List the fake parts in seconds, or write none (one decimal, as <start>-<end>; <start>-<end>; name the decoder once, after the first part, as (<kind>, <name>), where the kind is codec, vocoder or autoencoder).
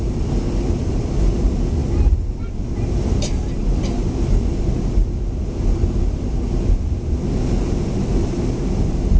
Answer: none